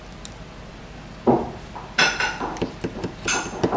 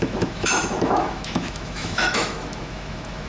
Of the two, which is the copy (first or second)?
second